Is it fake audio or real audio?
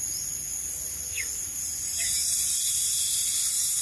real